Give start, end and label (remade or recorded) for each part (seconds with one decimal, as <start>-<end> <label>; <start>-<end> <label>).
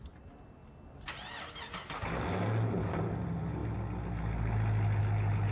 0.0-5.5 recorded